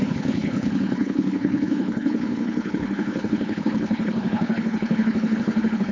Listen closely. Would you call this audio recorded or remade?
remade